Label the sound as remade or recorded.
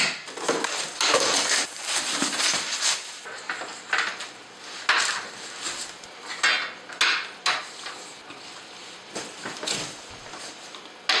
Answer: recorded